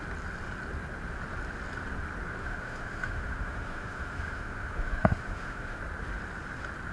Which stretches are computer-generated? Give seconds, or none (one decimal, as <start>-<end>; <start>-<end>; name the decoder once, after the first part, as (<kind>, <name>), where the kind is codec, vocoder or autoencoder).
2.4-5.8 (autoencoder, DAC-VAE)